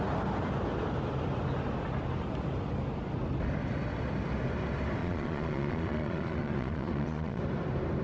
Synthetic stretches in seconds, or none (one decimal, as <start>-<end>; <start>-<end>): 5.0-7.4

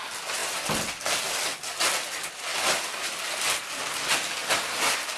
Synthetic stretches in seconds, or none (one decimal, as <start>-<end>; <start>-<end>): none

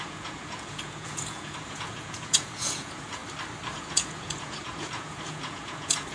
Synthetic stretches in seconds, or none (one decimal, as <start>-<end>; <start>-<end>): 0.0-3.2; 3.7-6.1

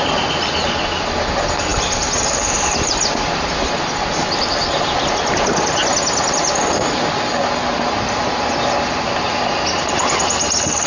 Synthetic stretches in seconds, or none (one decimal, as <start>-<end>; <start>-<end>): none

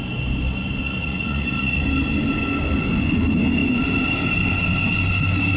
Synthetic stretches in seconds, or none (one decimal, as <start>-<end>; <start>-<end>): 0.8-1.8

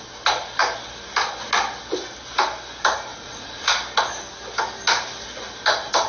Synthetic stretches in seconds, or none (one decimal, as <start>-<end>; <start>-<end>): 3.1-3.7

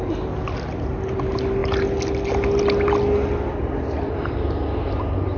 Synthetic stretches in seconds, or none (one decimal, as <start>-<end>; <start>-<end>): none